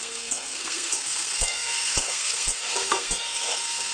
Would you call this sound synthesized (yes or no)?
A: yes